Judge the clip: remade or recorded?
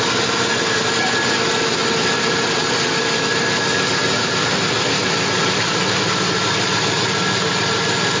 recorded